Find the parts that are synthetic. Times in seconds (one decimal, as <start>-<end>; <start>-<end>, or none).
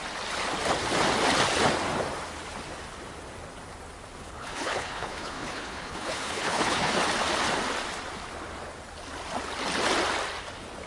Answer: 4.2-6.9